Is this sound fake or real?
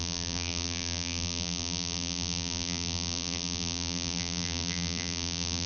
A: fake